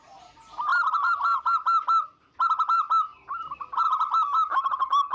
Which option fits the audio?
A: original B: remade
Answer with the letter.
A